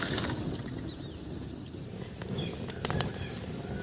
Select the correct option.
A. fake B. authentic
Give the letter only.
B